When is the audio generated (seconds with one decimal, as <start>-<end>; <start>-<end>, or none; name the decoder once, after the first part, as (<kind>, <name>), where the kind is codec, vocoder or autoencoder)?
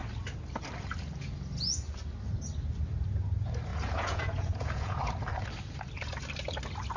3.7-5.0 (vocoder, Vocos)